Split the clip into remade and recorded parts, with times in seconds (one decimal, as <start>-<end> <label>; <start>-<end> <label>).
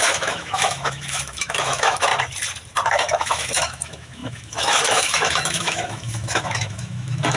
0.0-2.1 remade; 2.1-2.9 recorded; 2.9-7.4 remade